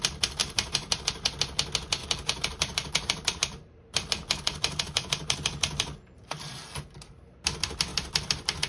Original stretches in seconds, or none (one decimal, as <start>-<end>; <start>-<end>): 0.0-0.4; 0.9-2.0; 6.6-7.9